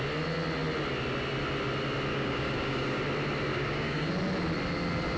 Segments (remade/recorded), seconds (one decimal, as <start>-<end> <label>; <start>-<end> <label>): 0.0-2.1 recorded; 2.1-3.0 remade; 3.0-3.5 recorded; 3.5-4.1 remade; 4.1-5.2 recorded